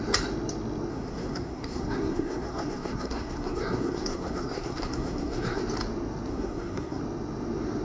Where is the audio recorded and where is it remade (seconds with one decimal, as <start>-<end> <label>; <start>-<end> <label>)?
0.0-0.9 recorded; 0.9-5.6 remade; 5.6-6.3 recorded; 6.3-7.0 remade; 7.0-7.8 recorded